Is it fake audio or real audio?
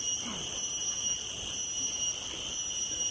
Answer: real